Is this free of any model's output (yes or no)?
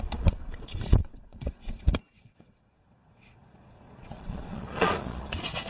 no